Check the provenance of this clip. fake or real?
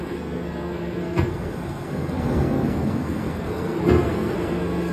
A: fake